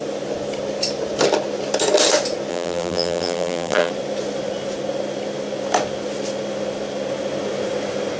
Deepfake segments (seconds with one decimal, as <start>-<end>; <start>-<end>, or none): 2.5-3.9

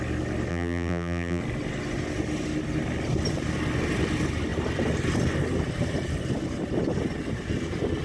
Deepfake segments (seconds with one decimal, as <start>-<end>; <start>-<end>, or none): 0.5-1.4

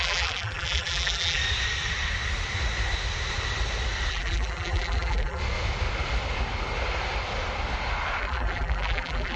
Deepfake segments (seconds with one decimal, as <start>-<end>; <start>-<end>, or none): 0.0-1.4; 4.1-5.4; 8.2-9.4

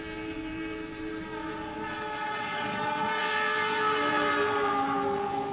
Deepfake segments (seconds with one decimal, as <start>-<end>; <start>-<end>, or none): 0.0-1.1; 3.2-5.5

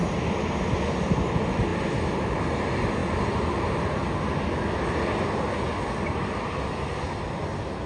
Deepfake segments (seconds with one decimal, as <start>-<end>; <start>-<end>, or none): none

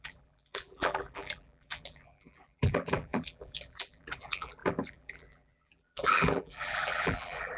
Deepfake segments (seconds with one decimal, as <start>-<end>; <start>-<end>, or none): 0.0-7.6